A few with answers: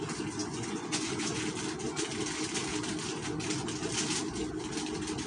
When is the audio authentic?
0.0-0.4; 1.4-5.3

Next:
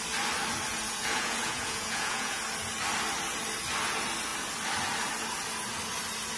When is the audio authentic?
0.0-0.7; 2.4-6.4

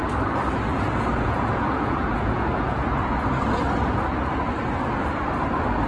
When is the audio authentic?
0.0-0.7; 3.1-5.9

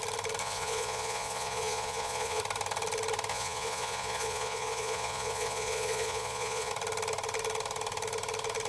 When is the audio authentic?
0.0-0.4; 2.4-3.3; 6.7-8.7

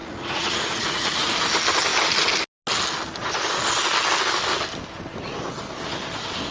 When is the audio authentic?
1.3-6.5

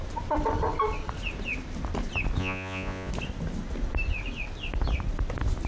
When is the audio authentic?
0.0-2.4; 3.1-5.7

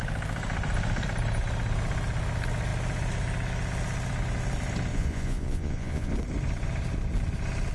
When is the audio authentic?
0.0-4.9; 6.1-7.7